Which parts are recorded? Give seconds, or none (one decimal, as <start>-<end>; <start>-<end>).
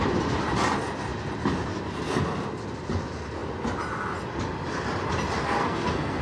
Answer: 0.0-5.4